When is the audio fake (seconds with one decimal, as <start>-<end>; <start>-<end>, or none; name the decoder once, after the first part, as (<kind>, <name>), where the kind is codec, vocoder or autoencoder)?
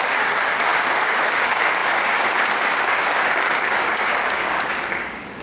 0.0-5.4 (codec, DAC)